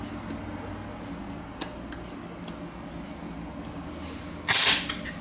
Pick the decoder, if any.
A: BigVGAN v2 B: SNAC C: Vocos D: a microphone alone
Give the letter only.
D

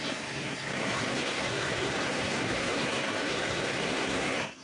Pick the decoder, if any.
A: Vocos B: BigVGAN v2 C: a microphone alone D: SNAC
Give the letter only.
D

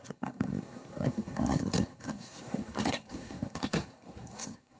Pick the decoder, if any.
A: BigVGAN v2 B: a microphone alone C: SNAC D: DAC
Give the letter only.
C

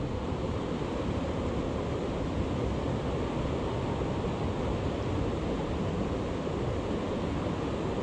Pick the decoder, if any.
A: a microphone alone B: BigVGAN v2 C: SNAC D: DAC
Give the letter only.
A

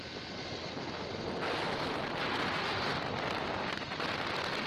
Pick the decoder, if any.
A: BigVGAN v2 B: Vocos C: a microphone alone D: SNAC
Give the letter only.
C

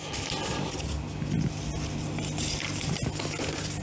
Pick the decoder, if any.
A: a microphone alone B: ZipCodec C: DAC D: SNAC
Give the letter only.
A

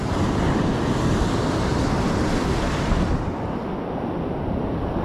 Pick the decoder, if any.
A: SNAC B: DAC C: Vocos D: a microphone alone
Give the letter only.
D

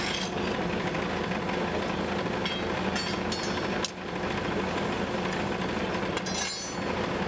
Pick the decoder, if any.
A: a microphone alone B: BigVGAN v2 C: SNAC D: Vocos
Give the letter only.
A